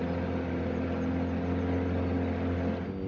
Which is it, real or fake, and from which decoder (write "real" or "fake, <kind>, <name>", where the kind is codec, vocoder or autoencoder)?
real